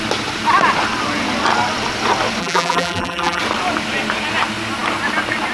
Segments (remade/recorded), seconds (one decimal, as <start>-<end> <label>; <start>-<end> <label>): 0.0-2.4 recorded; 2.4-3.4 remade; 3.4-5.5 recorded